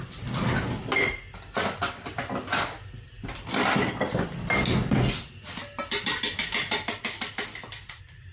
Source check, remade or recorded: recorded